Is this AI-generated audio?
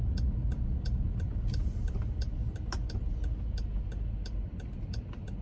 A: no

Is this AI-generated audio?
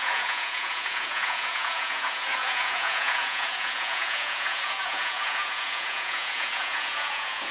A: yes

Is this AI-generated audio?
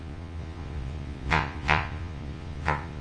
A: yes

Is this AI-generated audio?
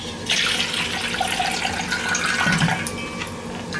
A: no